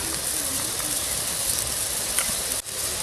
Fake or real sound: real